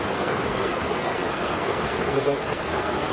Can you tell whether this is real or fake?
fake